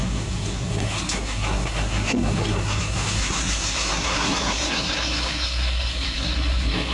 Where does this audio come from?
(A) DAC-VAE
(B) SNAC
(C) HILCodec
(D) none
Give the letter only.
B